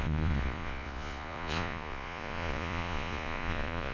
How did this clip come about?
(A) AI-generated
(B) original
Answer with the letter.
A